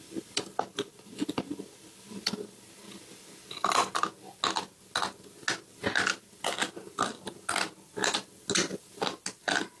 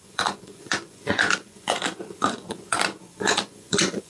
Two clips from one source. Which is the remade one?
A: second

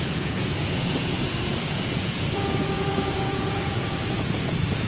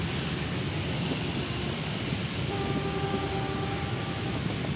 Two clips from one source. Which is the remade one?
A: first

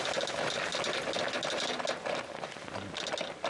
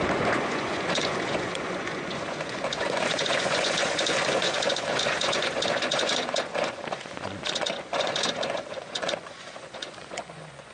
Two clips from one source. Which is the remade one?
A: second